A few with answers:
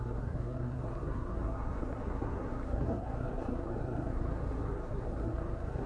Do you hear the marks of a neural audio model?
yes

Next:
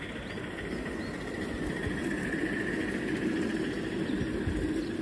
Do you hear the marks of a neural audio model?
no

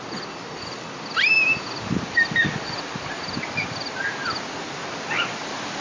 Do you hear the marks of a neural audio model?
no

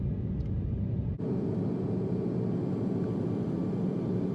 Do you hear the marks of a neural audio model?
no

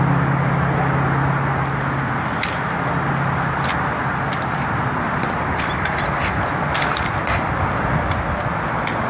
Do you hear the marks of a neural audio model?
no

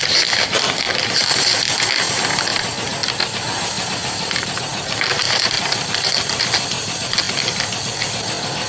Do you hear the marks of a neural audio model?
no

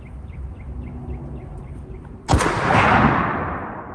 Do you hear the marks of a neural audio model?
no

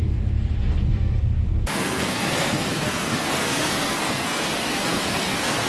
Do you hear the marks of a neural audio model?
yes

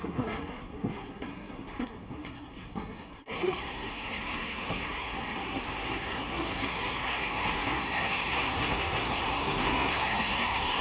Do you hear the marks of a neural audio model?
yes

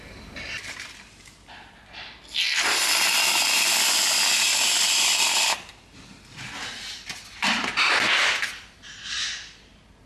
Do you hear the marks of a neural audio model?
no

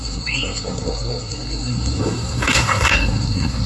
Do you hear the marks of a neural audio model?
yes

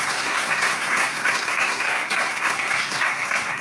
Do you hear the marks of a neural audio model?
yes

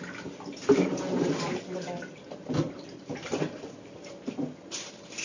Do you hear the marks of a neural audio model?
no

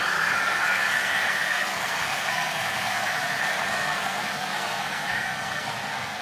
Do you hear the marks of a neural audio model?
yes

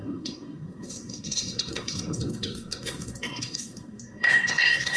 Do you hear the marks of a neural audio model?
yes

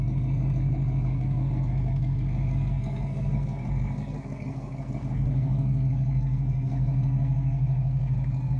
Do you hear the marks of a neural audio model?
yes